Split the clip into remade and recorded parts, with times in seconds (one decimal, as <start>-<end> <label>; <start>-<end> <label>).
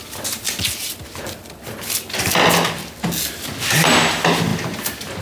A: 0.0-4.5 recorded; 4.5-5.2 remade